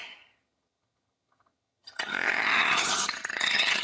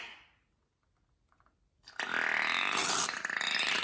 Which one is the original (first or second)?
second